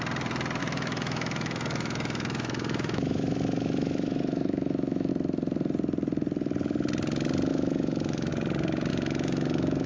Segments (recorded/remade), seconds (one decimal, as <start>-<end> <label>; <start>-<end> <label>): 0.0-0.6 recorded; 0.6-5.1 remade; 5.1-7.5 recorded; 7.5-8.3 remade; 8.3-8.9 recorded; 8.9-9.9 remade